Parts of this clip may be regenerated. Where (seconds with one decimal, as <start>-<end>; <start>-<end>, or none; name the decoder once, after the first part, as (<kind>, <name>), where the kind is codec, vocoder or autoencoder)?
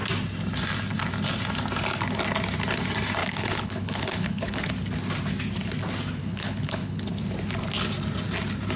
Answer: 3.2-4.7 (codec, HILCodec); 6.2-7.2